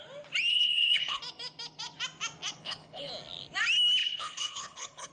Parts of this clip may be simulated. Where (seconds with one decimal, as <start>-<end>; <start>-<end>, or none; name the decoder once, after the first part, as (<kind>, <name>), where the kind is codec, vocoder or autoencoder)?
0.5-1.2 (codec, HILCodec); 2.5-3.1; 4.0-5.1

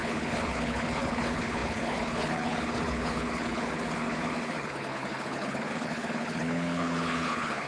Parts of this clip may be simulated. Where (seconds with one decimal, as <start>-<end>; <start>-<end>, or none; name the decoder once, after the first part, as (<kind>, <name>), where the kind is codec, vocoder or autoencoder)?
0.0-7.7 (codec, HILCodec)

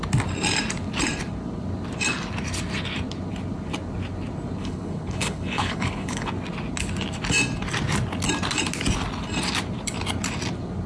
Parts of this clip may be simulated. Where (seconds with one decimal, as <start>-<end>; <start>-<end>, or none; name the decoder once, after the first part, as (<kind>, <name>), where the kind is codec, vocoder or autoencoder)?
4.6-6.3 (codec, HILCodec)

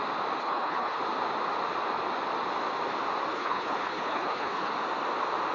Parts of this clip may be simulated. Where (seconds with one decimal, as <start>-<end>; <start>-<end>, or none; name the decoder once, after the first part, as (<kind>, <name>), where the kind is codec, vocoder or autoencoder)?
0.4-1.0 (codec, HILCodec); 3.3-4.7

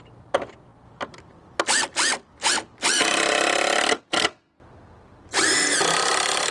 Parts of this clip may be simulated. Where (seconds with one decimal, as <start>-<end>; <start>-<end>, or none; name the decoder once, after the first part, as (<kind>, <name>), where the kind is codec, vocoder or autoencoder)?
none

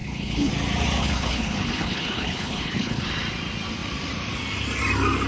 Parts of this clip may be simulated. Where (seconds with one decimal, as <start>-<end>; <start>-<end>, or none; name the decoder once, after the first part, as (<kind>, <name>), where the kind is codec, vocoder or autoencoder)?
0.0-0.5 (codec, HILCodec); 1.0-3.0